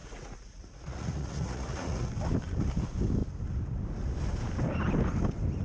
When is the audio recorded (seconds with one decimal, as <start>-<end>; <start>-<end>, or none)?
2.1-5.6